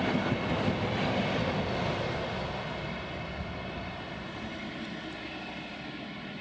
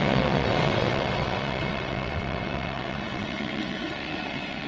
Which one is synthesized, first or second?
second